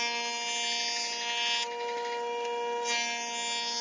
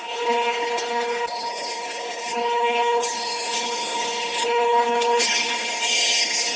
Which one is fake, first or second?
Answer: second